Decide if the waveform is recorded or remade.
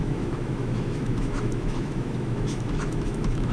remade